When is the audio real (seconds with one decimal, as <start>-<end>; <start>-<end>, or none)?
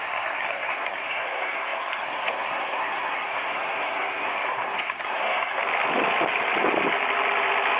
5.6-7.8